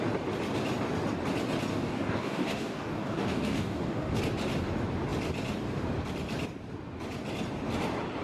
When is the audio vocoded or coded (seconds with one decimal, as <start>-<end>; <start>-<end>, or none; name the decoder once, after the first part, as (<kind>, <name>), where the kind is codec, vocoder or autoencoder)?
1.7-4.2 (codec, DAC)